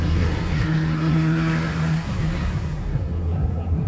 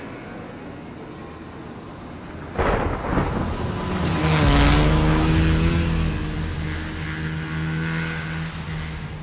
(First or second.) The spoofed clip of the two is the first